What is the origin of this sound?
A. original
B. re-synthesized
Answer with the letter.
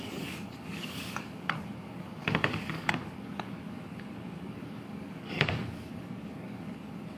B